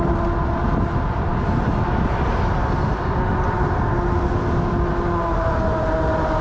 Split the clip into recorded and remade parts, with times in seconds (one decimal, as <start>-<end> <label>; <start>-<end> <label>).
0.0-6.4 recorded